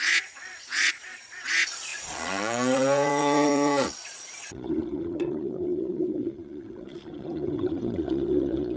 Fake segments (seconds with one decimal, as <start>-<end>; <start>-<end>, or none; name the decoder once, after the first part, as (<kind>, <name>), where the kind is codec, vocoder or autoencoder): 0.0-8.8 (vocoder, Vocos)